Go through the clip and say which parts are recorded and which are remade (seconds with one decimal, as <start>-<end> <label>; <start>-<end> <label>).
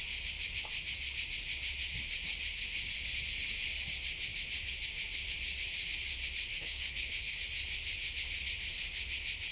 0.0-6.5 recorded; 6.5-7.4 remade; 7.4-9.5 recorded